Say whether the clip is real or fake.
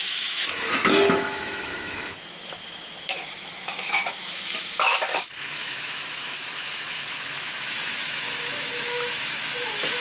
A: fake